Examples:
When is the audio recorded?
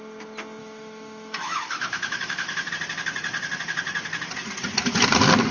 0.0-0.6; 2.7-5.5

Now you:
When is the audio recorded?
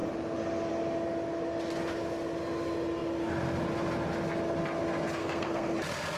0.0-5.2; 5.7-6.2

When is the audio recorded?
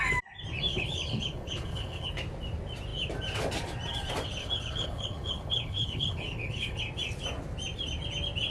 0.0-0.7; 2.1-4.4; 6.8-8.5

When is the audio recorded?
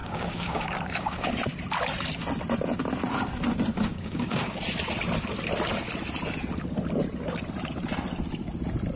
1.3-3.9; 4.6-9.0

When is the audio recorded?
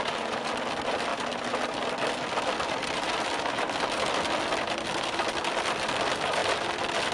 0.0-7.1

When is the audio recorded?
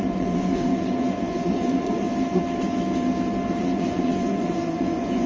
2.1-3.6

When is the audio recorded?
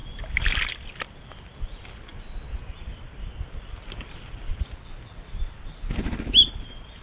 0.0-7.0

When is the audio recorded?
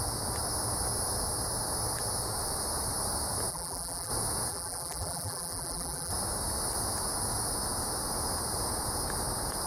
0.0-3.5; 4.1-4.5; 6.1-9.7